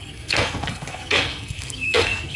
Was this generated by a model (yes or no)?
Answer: yes